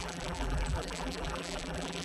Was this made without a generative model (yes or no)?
no